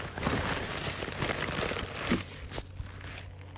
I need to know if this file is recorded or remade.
recorded